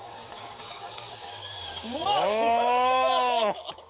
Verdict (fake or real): fake